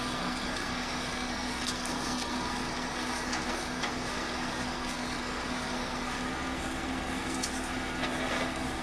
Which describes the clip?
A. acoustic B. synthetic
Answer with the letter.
B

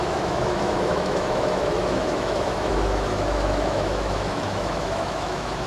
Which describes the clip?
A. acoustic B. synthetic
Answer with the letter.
B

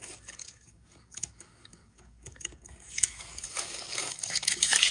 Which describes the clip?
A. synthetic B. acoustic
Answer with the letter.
A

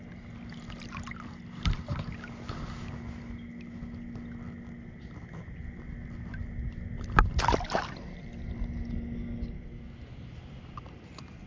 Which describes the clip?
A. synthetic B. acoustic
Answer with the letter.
B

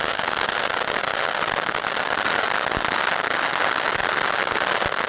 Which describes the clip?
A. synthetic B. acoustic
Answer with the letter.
B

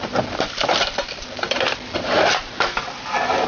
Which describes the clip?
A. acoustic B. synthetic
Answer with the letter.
B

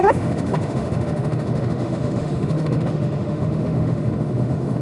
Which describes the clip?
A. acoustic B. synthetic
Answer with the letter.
B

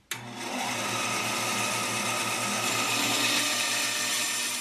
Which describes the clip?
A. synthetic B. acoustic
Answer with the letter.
B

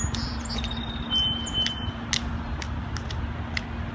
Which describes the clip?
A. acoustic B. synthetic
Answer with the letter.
A